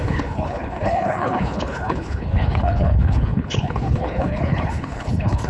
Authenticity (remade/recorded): remade